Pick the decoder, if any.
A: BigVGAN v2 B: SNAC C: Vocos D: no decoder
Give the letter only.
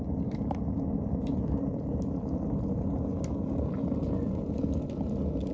D